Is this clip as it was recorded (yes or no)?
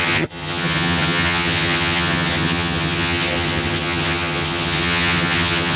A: no